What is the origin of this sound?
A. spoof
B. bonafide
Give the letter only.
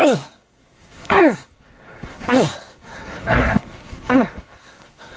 A